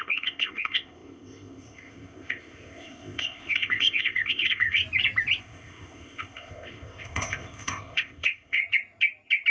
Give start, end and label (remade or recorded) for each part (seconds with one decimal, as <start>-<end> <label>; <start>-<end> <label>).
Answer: 0.0-4.8 remade; 4.8-5.4 recorded; 5.4-8.6 remade; 8.6-9.5 recorded